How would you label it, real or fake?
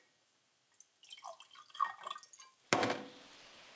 real